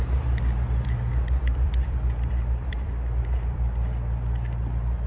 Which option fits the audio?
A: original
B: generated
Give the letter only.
B